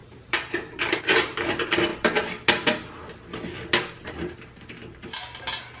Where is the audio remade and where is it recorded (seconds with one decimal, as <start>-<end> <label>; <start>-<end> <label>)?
0.0-1.9 remade; 1.9-5.8 recorded